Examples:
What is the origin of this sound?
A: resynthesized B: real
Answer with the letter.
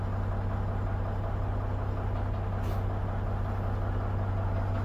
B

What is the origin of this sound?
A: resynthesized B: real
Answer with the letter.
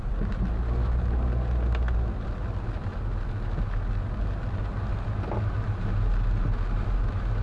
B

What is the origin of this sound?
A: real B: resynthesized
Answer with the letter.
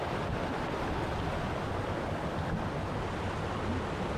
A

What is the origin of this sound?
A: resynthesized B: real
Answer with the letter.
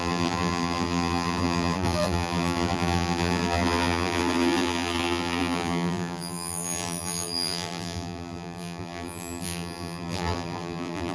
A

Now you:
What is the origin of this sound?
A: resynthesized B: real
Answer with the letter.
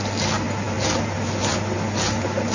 B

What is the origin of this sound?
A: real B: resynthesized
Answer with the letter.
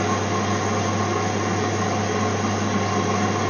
A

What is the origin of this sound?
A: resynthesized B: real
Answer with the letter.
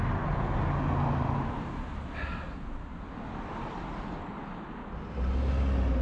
B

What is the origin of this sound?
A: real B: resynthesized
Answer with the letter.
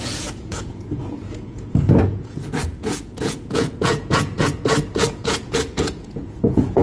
B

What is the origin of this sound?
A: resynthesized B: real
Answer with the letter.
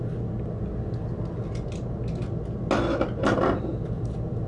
B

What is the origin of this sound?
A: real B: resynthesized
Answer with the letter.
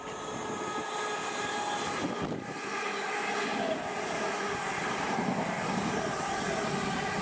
A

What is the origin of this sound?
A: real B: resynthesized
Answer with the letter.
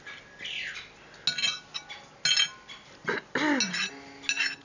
A